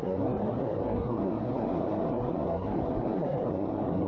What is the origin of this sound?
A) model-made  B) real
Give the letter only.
A